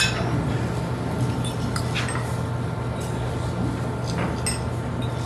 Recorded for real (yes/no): yes